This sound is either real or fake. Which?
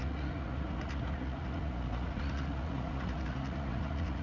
fake